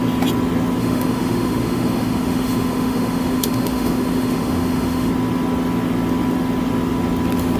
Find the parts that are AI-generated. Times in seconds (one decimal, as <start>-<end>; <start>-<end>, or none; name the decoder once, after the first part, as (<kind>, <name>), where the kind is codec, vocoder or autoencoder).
0.8-5.1 (autoencoder, DAC-VAE)